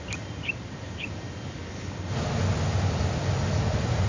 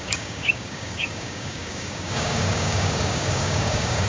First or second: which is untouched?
first